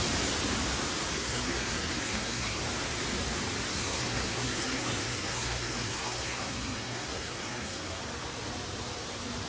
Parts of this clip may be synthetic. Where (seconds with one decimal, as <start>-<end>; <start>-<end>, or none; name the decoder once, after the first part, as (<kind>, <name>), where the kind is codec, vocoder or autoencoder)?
1.1-2.6 (codec, SNAC); 3.7-8.0